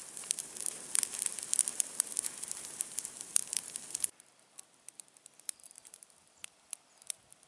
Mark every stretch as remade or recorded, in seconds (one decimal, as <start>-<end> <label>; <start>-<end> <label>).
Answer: 0.0-0.7 remade; 0.7-1.7 recorded; 1.7-3.8 remade; 3.8-5.6 recorded; 5.6-6.1 remade; 6.1-7.5 recorded